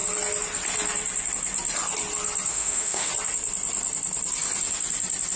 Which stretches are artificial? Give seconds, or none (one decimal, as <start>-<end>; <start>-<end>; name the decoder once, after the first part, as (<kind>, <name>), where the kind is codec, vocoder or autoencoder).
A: 2.5-3.1 (autoencoder, DAC-VAE)